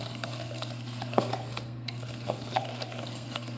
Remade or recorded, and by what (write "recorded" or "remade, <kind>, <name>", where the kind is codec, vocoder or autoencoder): remade, codec, SNAC